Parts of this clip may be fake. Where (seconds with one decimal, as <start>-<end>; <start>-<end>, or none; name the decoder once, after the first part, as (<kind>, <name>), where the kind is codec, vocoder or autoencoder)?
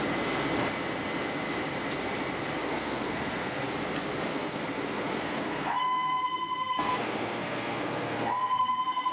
2.6-3.7 (codec, SNAC); 4.3-9.1